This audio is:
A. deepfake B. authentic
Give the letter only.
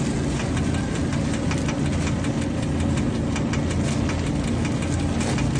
B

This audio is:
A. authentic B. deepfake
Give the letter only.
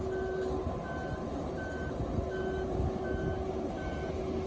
A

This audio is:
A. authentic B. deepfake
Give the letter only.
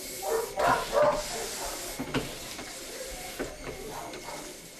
A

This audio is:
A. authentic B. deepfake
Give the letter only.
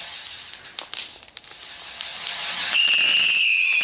A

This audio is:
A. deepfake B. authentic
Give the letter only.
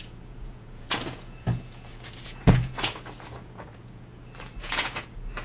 A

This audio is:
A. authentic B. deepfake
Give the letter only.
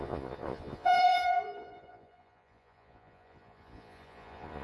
B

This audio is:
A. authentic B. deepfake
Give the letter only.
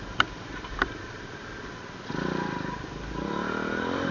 A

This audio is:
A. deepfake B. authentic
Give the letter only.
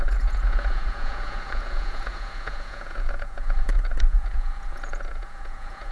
A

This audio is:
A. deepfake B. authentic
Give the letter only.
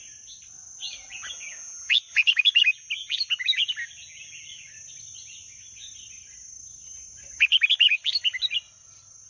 B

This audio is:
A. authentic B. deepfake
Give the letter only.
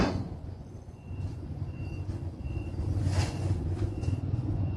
B